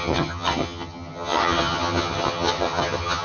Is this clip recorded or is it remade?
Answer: remade